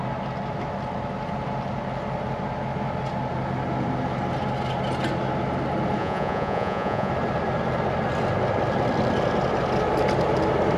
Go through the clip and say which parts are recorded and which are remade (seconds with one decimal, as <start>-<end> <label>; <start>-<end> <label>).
0.0-6.0 recorded; 6.0-7.1 remade; 7.1-10.8 recorded

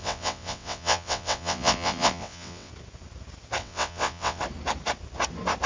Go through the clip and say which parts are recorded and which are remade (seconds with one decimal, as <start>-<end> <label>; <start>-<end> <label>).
0.0-2.7 remade; 2.7-3.6 recorded; 3.6-4.4 remade; 4.4-5.7 recorded

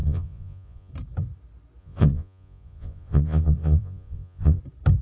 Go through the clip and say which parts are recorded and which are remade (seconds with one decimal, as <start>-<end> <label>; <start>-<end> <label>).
0.0-0.9 remade; 0.9-1.8 recorded; 1.8-4.6 remade; 4.6-5.0 recorded

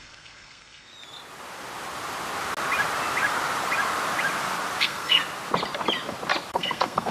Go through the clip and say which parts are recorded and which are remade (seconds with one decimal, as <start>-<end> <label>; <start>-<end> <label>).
0.0-0.9 remade; 0.9-4.8 recorded; 4.8-5.2 remade; 5.2-6.5 recorded; 6.5-7.1 remade

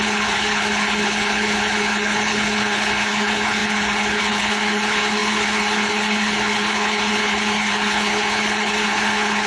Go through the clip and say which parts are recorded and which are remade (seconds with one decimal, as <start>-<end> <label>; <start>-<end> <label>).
0.0-9.5 remade

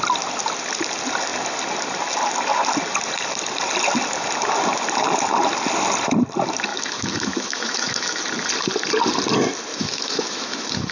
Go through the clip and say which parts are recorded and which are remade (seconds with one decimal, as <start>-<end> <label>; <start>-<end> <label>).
0.0-6.7 recorded; 6.7-8.2 remade; 8.2-9.7 recorded; 9.7-10.9 remade